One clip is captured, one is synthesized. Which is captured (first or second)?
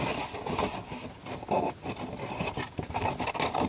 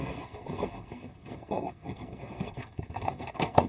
first